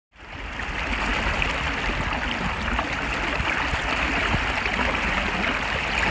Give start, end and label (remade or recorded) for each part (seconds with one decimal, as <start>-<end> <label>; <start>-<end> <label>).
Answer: 0.0-6.1 recorded